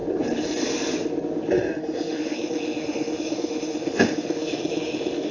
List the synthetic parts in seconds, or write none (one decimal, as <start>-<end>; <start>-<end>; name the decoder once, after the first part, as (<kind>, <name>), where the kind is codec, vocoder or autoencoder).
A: 1.5-5.3 (autoencoder, DAC-VAE)

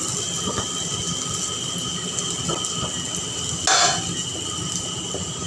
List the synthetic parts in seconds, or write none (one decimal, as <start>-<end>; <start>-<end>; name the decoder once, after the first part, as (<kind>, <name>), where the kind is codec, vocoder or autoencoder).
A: none

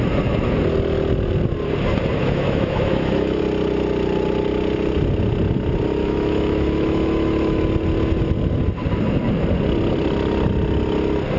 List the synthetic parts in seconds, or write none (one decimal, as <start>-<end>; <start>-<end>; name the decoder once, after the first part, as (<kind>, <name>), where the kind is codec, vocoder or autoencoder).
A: 2.2-3.4 (autoencoder, DAC-VAE); 6.0-7.6

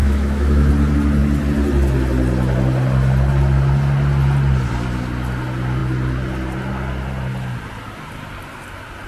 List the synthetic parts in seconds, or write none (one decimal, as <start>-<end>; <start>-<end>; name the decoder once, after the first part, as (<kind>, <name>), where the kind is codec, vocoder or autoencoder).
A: 0.0-0.7 (autoencoder, DAC-VAE)